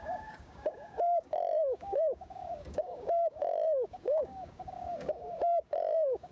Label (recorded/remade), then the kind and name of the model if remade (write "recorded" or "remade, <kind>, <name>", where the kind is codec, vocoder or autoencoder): remade, codec, DAC